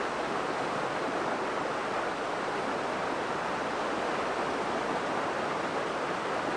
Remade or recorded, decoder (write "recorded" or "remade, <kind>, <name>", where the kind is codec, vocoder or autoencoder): recorded